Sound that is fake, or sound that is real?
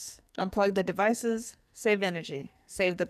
fake